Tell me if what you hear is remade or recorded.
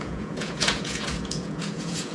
remade